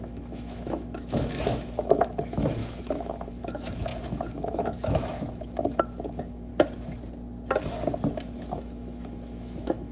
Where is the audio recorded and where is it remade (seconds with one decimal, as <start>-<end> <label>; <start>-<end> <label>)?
0.0-6.5 remade; 6.5-8.1 recorded; 8.1-9.9 remade

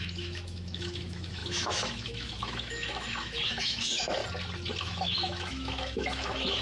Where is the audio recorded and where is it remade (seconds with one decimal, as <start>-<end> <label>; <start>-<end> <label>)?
0.0-4.2 remade; 4.2-4.8 recorded; 4.8-6.6 remade

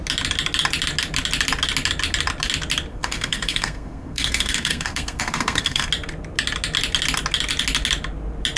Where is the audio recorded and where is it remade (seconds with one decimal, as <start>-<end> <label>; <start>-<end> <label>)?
0.0-2.9 recorded; 2.9-5.9 remade; 5.9-8.6 recorded

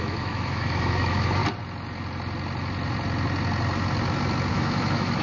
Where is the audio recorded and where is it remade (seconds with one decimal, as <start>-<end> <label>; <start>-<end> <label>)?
0.0-1.4 remade; 1.4-4.5 recorded; 4.5-5.2 remade

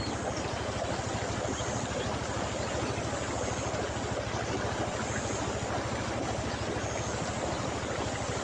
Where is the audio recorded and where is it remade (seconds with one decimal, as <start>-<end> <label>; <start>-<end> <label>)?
0.0-8.4 recorded

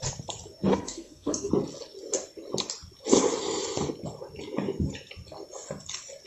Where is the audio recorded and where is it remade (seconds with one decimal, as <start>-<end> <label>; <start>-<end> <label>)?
0.0-0.7 recorded; 0.7-1.5 remade; 1.5-6.3 recorded

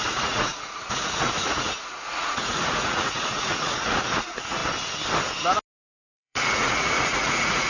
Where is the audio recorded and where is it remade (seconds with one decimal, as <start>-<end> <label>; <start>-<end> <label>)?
0.0-4.6 remade; 4.6-6.0 recorded; 6.0-7.7 remade